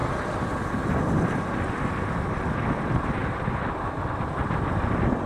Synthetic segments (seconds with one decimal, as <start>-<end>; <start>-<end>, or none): none